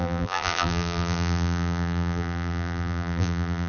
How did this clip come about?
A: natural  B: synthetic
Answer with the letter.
B